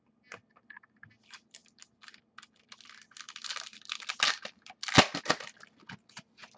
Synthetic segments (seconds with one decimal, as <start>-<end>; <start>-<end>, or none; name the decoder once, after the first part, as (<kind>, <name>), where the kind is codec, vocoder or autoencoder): none